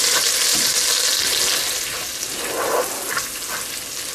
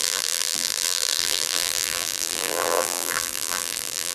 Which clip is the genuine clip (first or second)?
first